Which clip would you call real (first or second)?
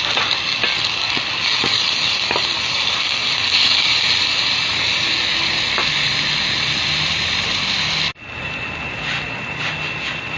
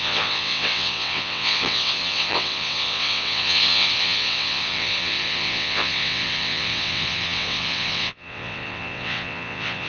first